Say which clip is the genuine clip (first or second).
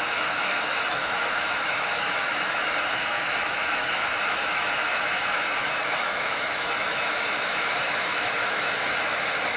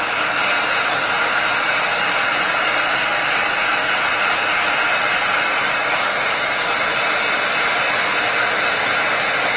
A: second